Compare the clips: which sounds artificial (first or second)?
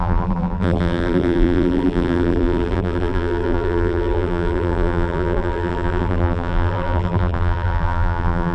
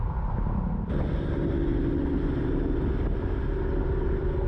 first